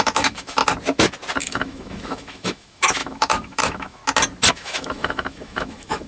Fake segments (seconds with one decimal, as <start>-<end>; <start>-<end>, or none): 0.0-0.6; 1.4-4.0; 4.5-6.1